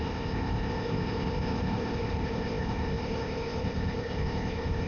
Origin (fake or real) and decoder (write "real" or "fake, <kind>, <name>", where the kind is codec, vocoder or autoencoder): fake, codec, ZipCodec